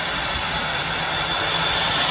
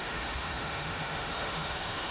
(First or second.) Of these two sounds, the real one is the first